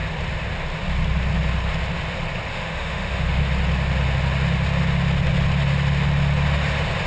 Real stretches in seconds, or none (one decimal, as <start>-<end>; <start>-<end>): 0.0-2.5; 3.4-7.1